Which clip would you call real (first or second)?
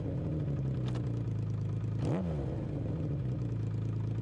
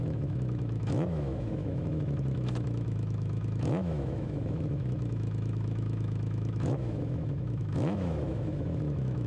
first